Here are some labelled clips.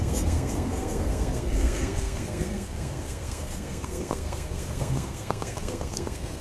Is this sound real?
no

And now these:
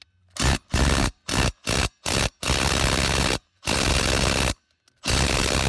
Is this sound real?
yes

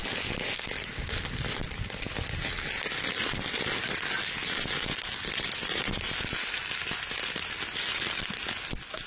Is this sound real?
yes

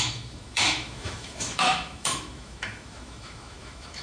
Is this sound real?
no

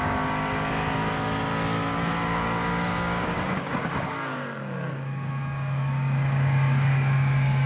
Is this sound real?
no